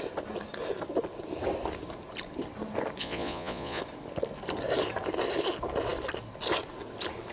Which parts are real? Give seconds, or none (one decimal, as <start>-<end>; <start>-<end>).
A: 0.0-3.0; 3.8-7.3